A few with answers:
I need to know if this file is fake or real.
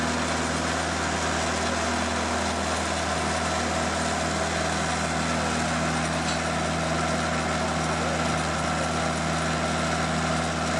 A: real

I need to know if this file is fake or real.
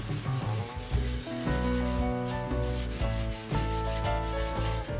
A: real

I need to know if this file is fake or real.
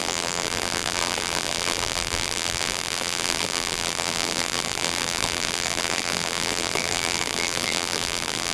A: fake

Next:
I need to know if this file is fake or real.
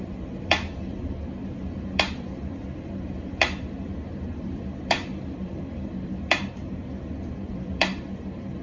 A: fake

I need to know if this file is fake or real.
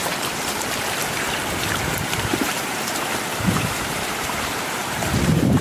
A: fake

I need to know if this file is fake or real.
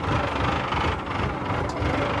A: real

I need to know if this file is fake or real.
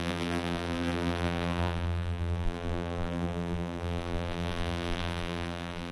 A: fake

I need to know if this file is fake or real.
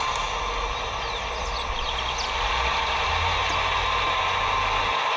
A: real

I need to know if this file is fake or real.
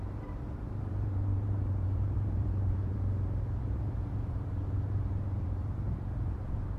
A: fake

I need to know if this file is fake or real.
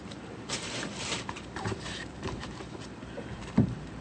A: fake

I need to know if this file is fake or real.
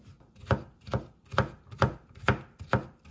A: real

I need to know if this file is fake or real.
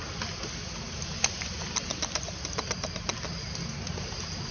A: fake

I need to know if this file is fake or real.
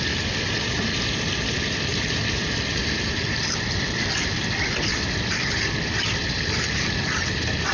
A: fake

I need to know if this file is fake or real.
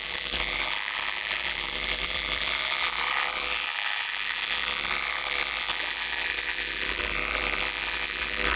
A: fake